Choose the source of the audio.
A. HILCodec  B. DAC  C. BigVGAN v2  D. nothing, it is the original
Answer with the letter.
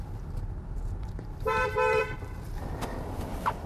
C